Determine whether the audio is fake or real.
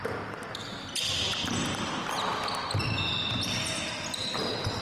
real